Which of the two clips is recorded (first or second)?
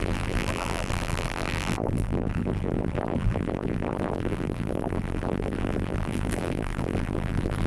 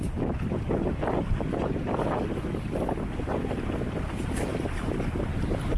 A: second